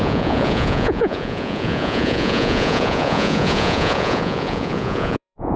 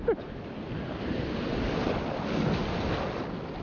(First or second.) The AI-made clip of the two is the first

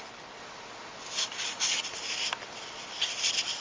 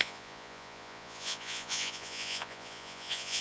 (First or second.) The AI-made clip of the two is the second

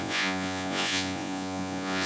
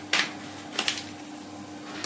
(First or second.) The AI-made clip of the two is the first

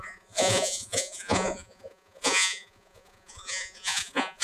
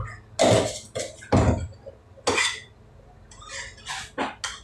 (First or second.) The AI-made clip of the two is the first